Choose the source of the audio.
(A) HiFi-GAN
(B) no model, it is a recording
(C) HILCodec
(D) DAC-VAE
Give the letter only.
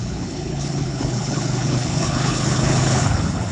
C